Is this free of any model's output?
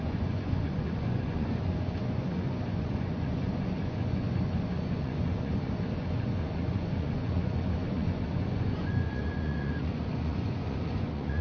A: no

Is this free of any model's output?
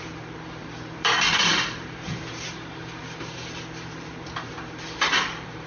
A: no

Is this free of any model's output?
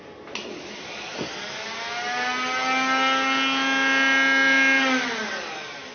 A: yes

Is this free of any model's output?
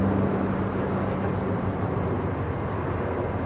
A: yes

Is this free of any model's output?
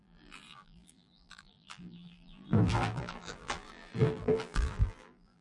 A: no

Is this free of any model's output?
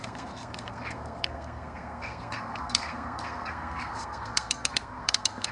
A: no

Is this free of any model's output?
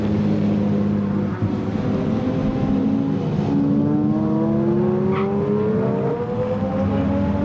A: yes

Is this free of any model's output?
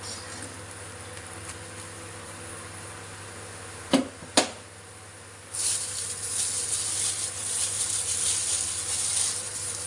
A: yes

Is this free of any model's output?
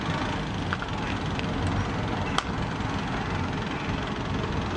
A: yes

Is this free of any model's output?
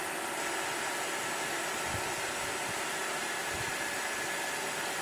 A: yes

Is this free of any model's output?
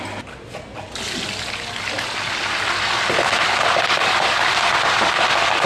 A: yes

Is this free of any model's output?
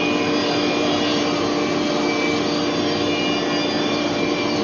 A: yes